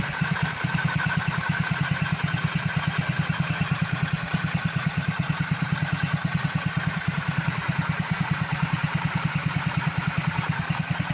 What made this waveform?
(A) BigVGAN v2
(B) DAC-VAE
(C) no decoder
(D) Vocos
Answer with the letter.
D